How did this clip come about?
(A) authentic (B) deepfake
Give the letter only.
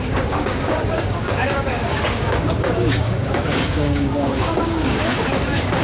B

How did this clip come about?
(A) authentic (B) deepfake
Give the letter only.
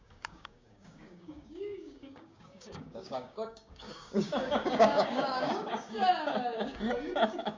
B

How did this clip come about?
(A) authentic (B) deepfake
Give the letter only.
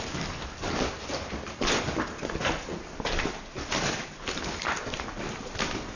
A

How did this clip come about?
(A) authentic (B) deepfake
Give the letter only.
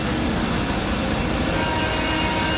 A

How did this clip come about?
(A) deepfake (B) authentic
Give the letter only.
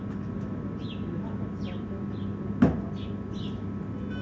B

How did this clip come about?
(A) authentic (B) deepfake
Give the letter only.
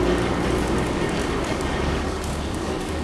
B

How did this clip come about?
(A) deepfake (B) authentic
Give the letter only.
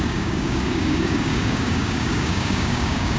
A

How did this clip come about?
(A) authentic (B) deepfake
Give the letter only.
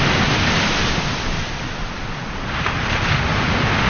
A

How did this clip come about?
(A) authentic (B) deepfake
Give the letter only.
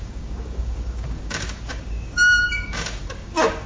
B